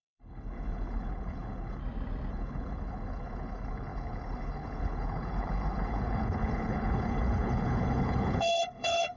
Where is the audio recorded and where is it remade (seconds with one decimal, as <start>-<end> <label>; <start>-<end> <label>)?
0.0-1.8 remade; 1.8-2.3 recorded; 2.3-9.2 remade